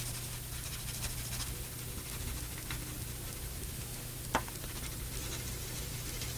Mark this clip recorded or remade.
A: recorded